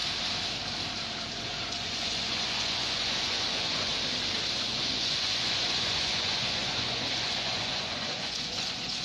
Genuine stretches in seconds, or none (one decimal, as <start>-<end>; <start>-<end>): 0.0-1.3; 3.9-4.5